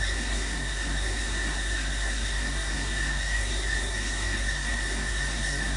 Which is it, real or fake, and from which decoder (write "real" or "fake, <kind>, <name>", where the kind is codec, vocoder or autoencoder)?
fake, codec, SNAC